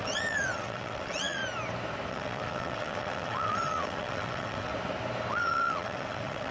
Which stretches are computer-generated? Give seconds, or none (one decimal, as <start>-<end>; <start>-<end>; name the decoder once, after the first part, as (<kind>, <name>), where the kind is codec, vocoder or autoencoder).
0.0-1.4 (vocoder, WaveNeXt); 2.1-4.7; 5.3-6.5